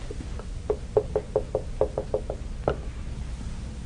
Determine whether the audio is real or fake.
real